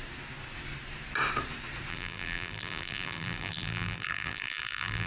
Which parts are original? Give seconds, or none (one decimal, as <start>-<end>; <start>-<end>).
0.0-1.9